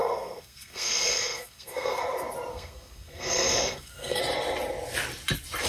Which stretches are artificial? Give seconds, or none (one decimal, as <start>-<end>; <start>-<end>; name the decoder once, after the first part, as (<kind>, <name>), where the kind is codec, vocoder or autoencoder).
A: 0.0-2.0 (codec, SNAC); 2.5-4.2